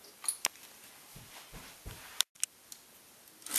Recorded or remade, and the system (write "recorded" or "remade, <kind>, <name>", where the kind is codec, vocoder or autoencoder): recorded